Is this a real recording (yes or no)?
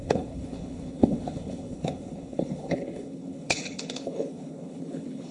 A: no